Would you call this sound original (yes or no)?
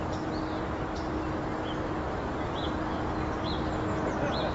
yes